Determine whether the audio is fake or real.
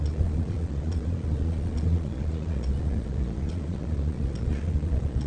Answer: fake